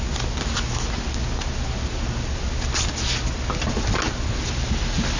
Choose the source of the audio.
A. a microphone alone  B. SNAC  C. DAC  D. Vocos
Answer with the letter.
A